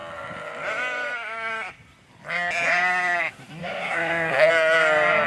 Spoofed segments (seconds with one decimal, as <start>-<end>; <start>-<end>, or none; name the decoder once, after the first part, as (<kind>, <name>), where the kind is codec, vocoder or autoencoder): 3.6-4.5 (codec, SNAC)